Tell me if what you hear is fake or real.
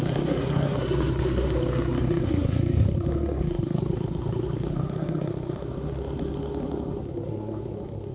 fake